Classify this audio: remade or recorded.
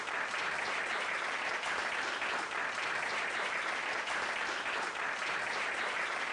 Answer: remade